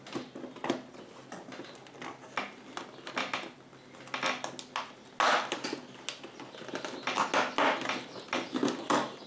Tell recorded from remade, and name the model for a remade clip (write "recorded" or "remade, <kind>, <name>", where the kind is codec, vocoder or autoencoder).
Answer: recorded